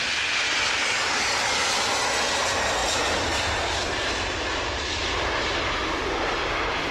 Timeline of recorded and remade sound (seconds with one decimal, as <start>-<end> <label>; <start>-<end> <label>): 0.0-0.8 recorded; 0.8-1.7 remade; 1.7-6.9 recorded